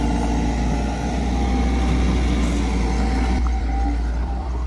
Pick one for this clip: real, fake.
real